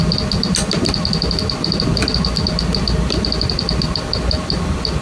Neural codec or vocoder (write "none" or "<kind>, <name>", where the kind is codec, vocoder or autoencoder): none